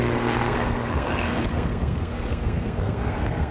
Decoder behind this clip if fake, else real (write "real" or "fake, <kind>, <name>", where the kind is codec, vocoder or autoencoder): fake, codec, SNAC